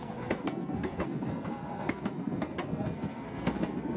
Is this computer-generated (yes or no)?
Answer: yes